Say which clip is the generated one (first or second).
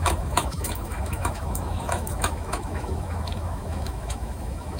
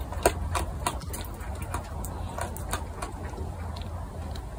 first